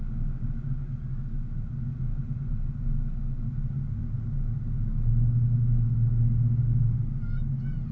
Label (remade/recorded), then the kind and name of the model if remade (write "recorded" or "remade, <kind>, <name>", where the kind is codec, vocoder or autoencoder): recorded